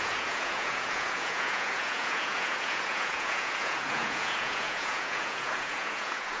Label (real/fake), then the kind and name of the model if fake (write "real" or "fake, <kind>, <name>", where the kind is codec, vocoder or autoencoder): fake, vocoder, Vocos